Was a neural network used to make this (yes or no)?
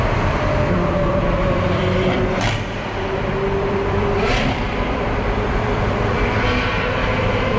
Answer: yes